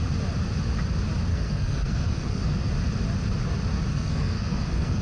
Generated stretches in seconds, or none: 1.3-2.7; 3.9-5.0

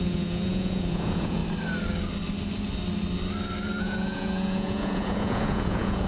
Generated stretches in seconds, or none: 0.0-1.4; 3.8-6.1

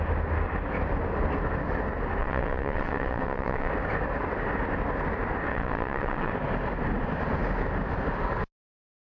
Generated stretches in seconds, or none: 2.2-3.7; 5.5-6.3